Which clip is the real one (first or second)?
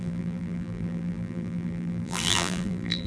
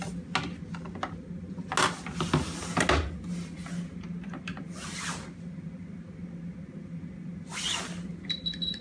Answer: second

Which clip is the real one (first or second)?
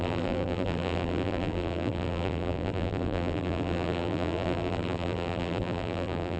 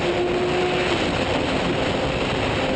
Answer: second